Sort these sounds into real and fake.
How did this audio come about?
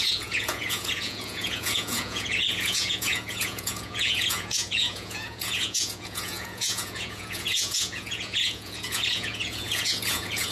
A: fake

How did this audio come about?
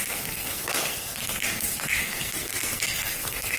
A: fake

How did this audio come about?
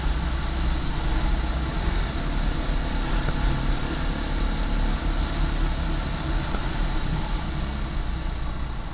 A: real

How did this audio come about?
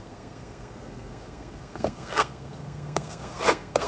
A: fake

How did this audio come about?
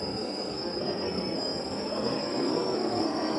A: fake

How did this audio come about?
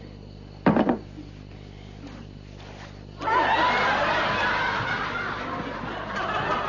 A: real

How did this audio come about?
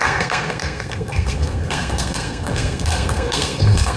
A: fake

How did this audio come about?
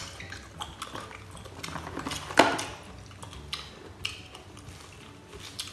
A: real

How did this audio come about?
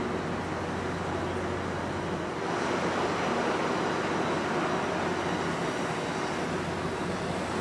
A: real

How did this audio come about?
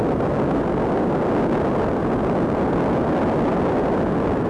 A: real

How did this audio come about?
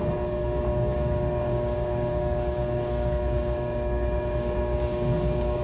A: fake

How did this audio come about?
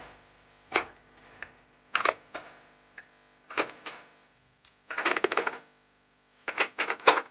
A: real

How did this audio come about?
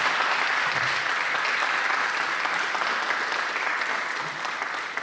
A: fake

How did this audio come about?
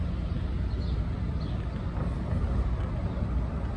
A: real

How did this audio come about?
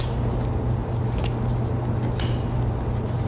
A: real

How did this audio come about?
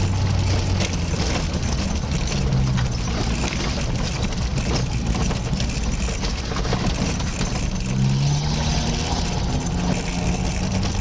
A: real